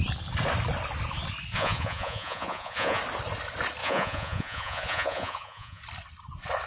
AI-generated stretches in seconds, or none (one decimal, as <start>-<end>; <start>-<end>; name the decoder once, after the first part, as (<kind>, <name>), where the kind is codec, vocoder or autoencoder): 1.5-3.0 (vocoder, Vocos); 3.8-5.8